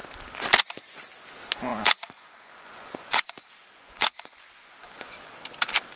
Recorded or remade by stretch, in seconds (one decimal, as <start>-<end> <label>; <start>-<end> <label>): 0.0-1.7 recorded; 1.7-5.3 remade; 5.3-6.0 recorded